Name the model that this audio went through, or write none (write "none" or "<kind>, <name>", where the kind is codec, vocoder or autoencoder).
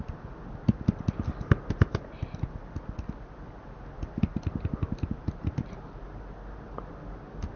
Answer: none